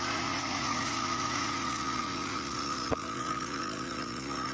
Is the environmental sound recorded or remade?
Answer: remade